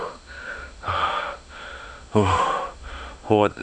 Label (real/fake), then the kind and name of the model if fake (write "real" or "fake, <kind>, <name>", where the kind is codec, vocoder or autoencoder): fake, autoencoder, DAC-VAE